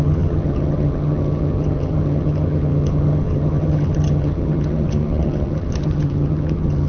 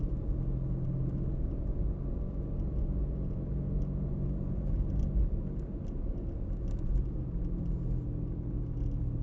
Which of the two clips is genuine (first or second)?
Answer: second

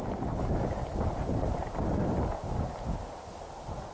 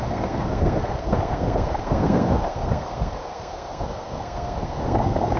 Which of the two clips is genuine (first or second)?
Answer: first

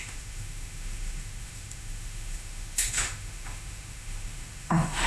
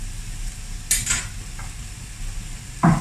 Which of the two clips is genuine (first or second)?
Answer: second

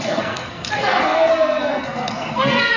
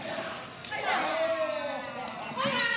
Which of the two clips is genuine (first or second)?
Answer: second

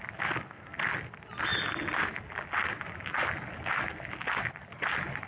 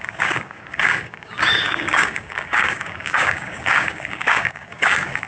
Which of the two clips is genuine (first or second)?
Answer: first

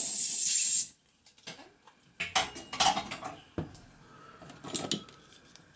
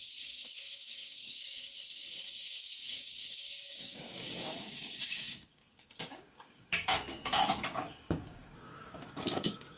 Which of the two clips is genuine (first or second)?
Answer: first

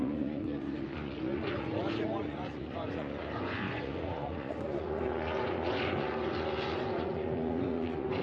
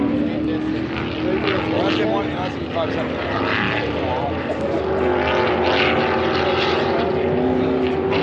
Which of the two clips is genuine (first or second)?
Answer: second